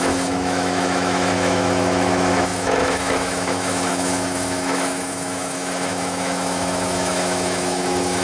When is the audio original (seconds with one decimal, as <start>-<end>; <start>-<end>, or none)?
none